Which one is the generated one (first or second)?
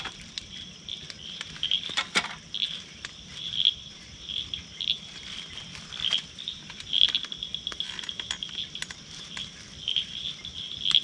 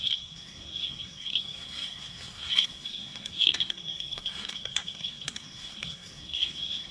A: second